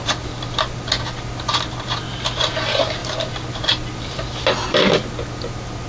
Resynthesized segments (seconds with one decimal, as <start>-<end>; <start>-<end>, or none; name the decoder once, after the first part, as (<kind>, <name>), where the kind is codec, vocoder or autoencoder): 3.0-4.4 (vocoder, BigVGAN v2)